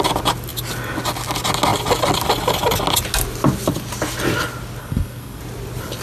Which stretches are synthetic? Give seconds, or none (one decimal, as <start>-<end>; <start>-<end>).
4.8-5.4